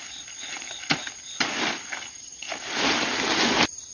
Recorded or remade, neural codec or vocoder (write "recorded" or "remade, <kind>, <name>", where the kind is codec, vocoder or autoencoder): recorded